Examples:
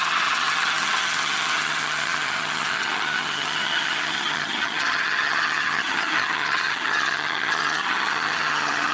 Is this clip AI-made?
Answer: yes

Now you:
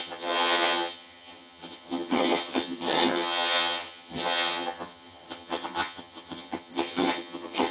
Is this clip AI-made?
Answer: yes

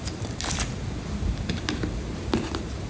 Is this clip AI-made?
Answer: no